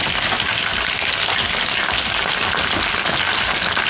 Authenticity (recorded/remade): recorded